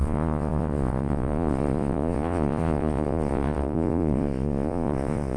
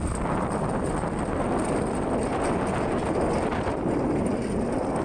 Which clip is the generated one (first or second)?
first